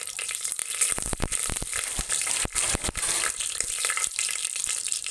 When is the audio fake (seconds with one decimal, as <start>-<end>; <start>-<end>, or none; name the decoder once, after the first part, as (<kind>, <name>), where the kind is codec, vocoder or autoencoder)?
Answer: 0.0-0.6 (vocoder, BigVGAN v2); 3.7-5.1